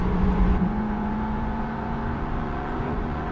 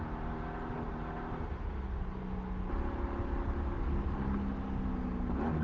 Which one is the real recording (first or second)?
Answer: second